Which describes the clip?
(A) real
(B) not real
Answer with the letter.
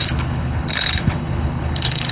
B